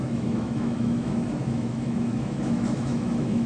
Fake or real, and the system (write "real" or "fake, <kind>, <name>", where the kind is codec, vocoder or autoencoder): fake, autoencoder, DAC-VAE